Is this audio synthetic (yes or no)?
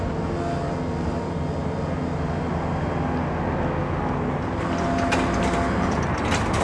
no